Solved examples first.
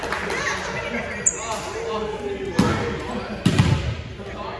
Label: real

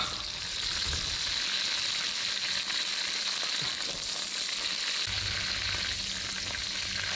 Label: real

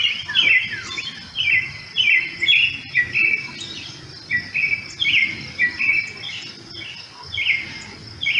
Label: real